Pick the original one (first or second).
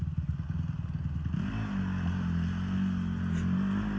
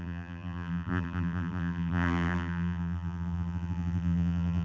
first